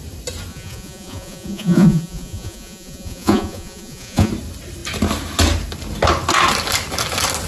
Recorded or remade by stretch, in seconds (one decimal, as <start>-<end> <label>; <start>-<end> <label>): 0.0-0.5 recorded; 0.5-4.3 remade; 4.3-7.5 recorded

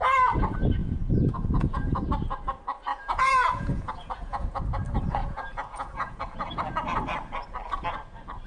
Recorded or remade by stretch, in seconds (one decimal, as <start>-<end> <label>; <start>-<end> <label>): 0.0-0.8 recorded; 0.8-2.0 remade; 2.0-2.9 recorded; 2.9-4.6 remade; 4.6-5.2 recorded; 5.2-6.2 remade; 6.2-8.5 recorded

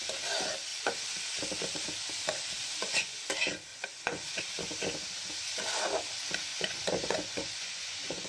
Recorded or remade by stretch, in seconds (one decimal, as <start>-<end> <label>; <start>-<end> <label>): 0.0-2.6 recorded; 2.6-3.2 remade; 3.2-3.7 recorded; 3.7-4.4 remade; 4.4-6.5 recorded; 6.5-8.3 remade

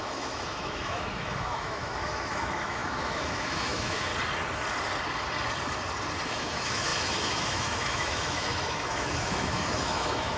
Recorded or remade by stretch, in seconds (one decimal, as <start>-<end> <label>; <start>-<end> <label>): 0.0-4.1 remade; 4.1-6.3 recorded; 6.3-10.4 remade

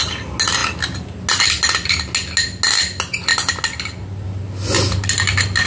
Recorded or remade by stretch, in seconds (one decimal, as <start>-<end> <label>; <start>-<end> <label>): 0.0-5.7 recorded

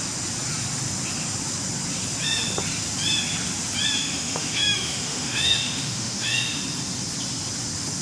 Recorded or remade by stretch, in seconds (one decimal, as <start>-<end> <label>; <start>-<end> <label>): 0.0-4.0 recorded; 4.0-6.6 remade; 6.6-8.0 recorded

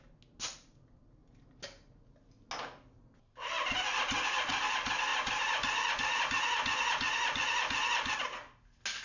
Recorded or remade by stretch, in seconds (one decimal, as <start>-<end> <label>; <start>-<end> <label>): 0.0-9.0 recorded